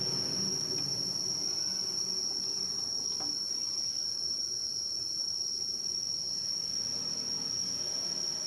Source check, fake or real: real